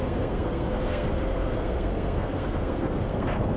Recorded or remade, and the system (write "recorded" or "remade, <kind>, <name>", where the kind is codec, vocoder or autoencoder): remade, codec, SNAC